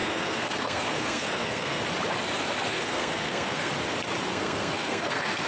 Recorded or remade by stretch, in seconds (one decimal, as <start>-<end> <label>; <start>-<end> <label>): 0.0-1.8 remade; 1.8-2.7 recorded; 2.7-3.7 remade; 3.7-4.3 recorded; 4.3-5.5 remade